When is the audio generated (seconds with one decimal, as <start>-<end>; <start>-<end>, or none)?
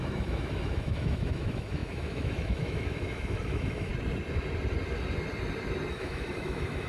0.0-3.9; 5.9-6.9